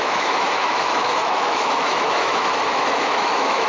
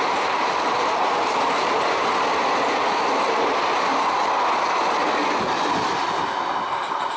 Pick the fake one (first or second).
first